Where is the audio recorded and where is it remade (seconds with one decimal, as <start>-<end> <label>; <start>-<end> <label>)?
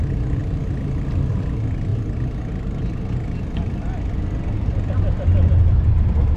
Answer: 0.0-6.4 recorded